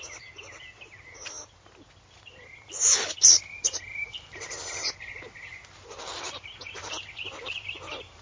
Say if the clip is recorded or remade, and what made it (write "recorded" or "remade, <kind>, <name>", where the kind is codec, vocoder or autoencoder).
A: recorded